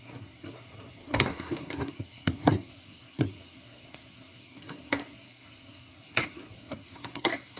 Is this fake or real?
fake